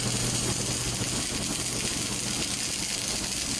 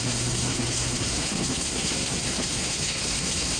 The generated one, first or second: second